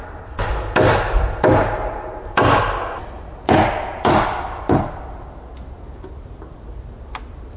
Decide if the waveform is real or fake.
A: real